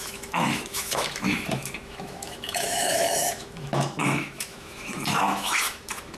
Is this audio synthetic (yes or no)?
yes